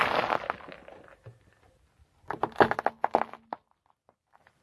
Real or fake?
real